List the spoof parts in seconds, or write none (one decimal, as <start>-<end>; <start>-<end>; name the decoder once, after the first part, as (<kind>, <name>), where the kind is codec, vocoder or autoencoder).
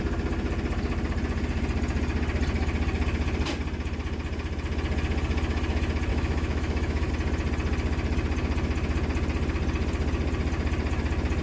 6.1-7.1 (autoencoder, DAC-VAE)